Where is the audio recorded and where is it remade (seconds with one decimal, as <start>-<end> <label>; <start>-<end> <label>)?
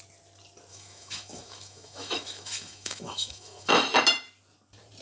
0.0-0.7 recorded; 0.7-3.7 remade; 3.7-5.0 recorded